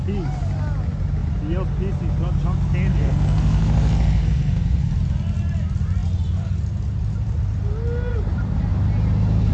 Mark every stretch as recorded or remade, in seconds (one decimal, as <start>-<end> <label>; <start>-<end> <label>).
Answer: 0.0-2.9 recorded; 2.9-4.9 remade; 4.9-9.5 recorded